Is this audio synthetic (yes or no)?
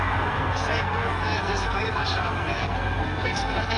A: yes